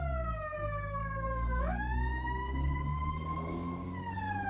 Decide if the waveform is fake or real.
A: fake